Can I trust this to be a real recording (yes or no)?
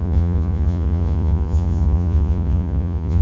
no